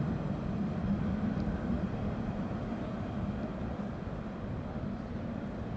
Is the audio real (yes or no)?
yes